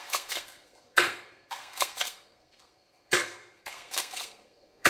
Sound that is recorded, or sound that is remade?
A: remade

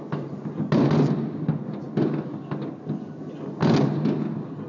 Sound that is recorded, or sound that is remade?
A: recorded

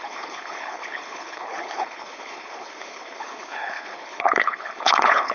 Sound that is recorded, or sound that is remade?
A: remade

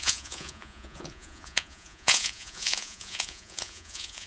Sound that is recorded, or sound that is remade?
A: remade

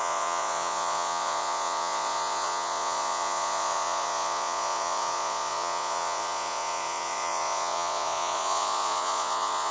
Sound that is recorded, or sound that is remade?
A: remade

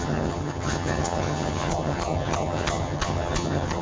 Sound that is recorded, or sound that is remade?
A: remade